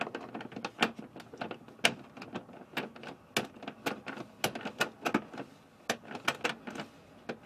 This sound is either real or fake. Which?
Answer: real